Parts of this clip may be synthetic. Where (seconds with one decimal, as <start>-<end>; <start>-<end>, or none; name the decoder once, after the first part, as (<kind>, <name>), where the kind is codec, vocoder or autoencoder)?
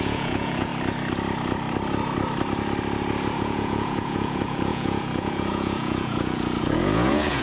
0.0-0.7 (vocoder, Vocos); 3.4-7.4